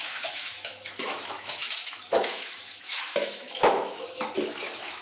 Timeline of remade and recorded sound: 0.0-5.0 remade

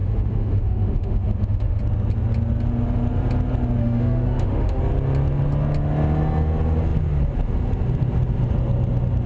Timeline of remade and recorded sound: 0.0-1.8 remade; 1.8-3.8 recorded; 3.8-4.8 remade; 4.8-9.3 recorded

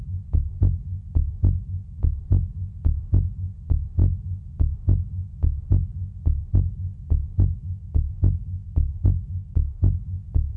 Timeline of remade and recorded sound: 0.0-7.6 recorded; 7.6-9.8 remade; 9.8-10.6 recorded

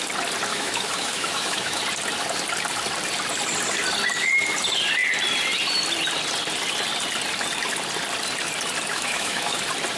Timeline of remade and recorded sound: 0.0-0.5 recorded; 0.5-1.8 remade; 1.8-8.9 recorded; 8.9-9.6 remade; 9.6-10.0 recorded